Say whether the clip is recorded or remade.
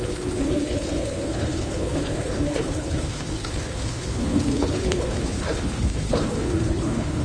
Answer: remade